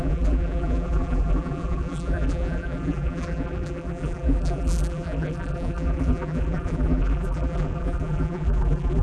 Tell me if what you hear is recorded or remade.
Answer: remade